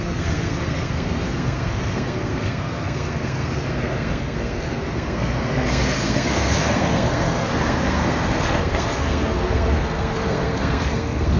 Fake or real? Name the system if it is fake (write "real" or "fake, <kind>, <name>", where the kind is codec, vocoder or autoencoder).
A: fake, codec, SNAC